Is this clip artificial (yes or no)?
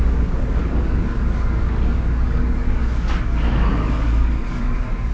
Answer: yes